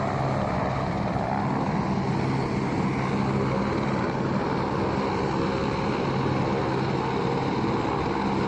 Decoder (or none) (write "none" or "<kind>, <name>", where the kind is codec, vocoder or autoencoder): none